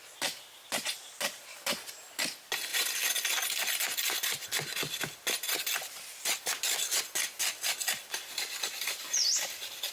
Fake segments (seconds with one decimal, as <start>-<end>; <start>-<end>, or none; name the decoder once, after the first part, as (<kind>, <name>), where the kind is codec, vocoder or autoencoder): none